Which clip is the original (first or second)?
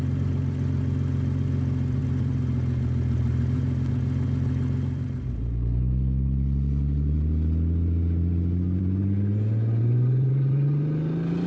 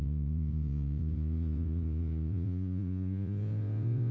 first